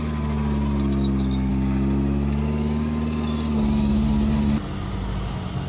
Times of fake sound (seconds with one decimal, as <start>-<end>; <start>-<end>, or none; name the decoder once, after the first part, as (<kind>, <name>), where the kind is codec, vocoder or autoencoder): none